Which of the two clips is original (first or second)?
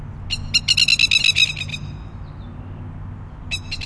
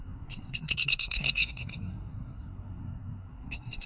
first